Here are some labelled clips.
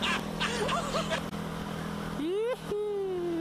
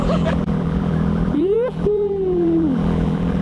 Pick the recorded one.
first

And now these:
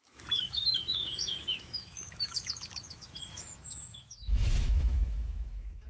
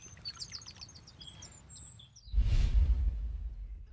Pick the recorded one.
second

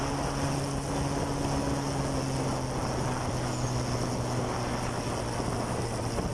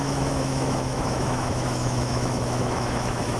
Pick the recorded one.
first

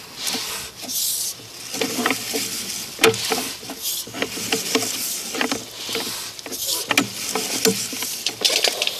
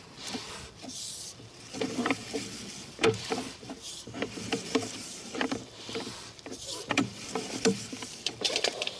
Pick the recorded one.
first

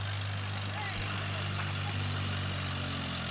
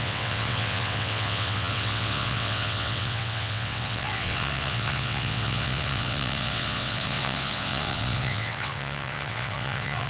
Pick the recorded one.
first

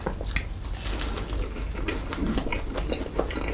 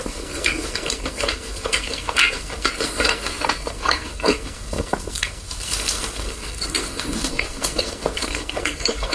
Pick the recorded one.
first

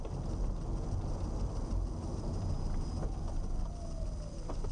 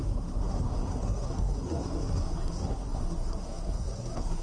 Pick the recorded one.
first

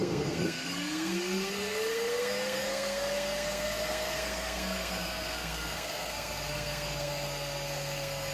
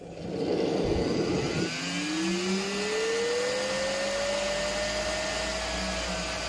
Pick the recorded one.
second